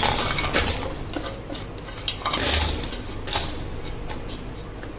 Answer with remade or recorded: recorded